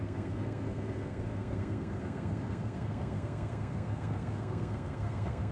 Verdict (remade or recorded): remade